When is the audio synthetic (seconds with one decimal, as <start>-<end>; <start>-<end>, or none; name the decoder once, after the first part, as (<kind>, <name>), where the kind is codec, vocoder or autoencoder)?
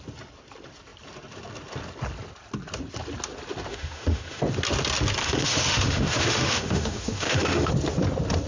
3.7-4.4 (autoencoder, DAC-VAE); 5.2-7.7